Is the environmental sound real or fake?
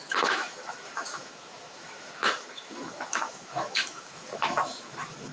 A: fake